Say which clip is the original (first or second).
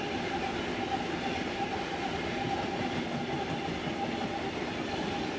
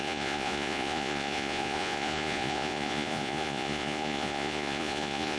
first